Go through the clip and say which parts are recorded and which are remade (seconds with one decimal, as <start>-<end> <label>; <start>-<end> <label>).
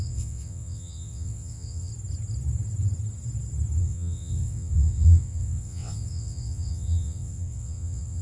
0.0-1.9 remade; 1.9-3.8 recorded; 3.8-8.2 remade